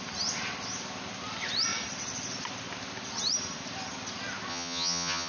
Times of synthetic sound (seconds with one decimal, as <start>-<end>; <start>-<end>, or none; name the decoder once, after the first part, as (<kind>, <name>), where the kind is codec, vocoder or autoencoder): 4.5-5.3 (vocoder, HiFi-GAN)